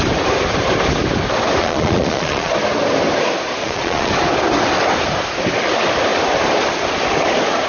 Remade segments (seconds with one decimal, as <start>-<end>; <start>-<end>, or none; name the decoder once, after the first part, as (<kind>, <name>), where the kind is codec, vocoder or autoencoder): 1.6-2.5 (vocoder, Vocos); 3.6-4.1